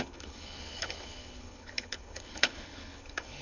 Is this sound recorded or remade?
remade